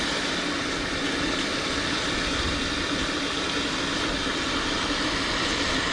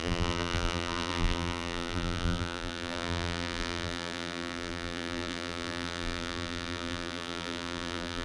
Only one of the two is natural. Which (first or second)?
first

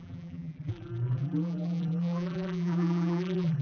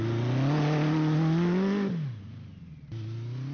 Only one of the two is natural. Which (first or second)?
second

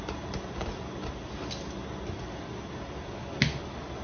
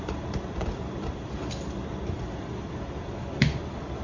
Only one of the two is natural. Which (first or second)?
first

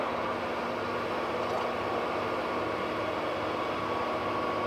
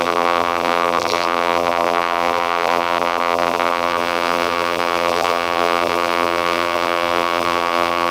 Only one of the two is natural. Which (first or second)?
first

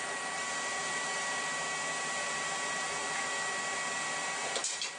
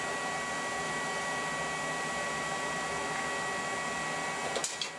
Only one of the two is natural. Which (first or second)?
second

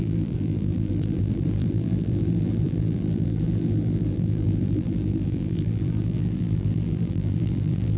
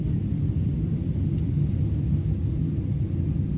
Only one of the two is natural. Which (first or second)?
second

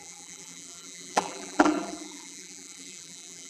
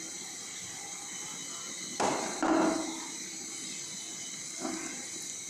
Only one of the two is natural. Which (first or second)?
second